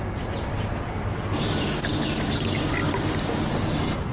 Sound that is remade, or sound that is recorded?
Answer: recorded